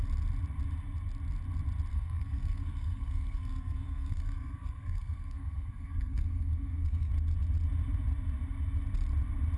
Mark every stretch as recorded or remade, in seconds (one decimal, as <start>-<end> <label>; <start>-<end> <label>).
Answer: 0.0-1.9 recorded; 1.9-7.1 remade; 7.1-9.6 recorded